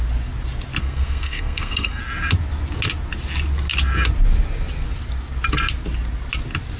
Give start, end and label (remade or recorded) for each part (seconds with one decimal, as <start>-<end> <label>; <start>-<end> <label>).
0.0-0.8 recorded; 0.8-2.0 remade; 2.0-6.8 recorded